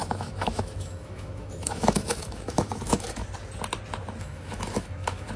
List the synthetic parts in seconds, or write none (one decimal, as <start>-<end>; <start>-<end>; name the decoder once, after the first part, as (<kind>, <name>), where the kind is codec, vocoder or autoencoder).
0.0-3.2 (autoencoder, DAC-VAE); 4.2-5.4